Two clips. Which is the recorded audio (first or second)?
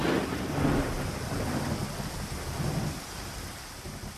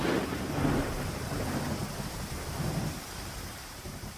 first